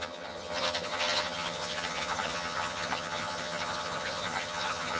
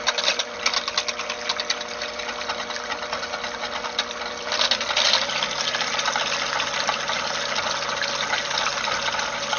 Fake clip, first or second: first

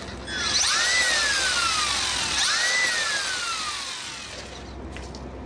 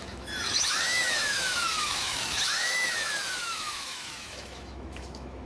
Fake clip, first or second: second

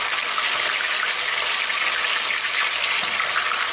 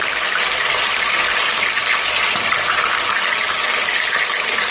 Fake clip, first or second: second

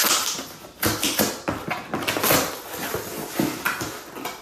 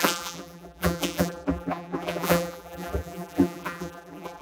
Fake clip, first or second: second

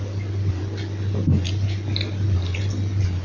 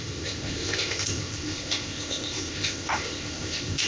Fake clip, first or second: second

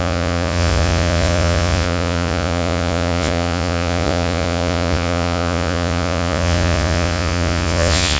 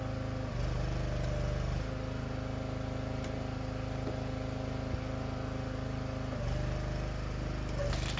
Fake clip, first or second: first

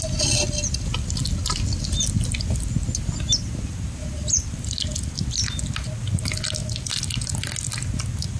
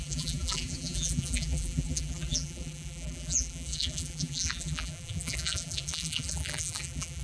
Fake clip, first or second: second